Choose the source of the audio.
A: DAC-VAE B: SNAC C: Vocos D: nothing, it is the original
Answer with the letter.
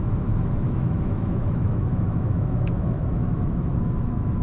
A